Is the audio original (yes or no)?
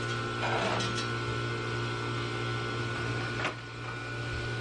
yes